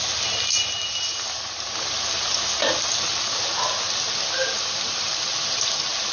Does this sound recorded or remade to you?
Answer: recorded